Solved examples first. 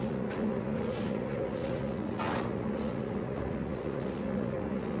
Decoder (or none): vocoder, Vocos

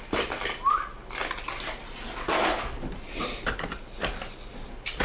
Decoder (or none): none